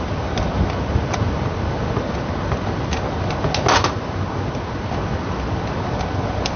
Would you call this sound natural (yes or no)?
yes